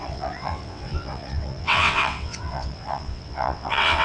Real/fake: fake